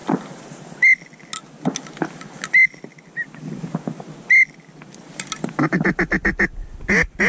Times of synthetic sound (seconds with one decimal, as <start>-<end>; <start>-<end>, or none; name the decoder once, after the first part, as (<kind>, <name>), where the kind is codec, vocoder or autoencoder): none